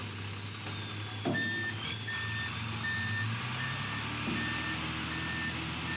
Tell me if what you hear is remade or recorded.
recorded